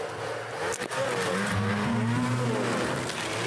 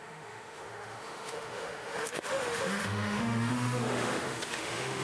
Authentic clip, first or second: first